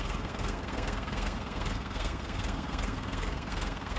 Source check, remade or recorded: remade